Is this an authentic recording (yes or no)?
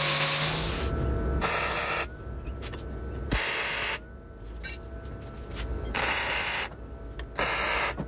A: yes